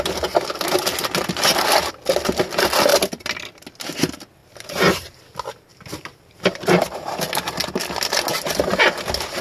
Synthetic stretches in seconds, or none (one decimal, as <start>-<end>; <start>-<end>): 4.4-5.2; 5.7-6.9; 8.3-9.4